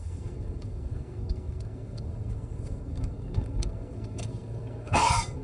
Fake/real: fake